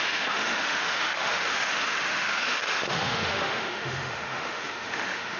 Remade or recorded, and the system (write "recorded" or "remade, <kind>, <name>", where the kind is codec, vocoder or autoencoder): remade, autoencoder, DAC-VAE